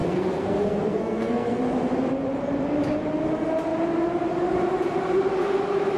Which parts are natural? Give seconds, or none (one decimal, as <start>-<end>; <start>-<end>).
1.6-6.0